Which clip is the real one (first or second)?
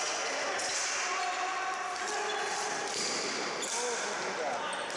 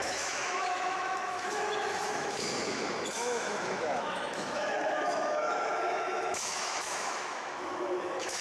first